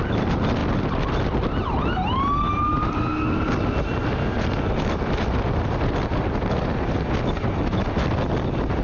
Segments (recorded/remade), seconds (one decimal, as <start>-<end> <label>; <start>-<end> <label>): 0.0-8.8 recorded